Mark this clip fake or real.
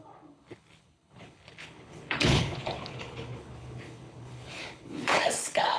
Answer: fake